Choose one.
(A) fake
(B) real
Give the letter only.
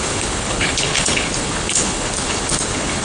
A